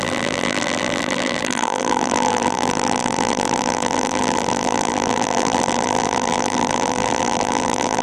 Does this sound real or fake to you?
fake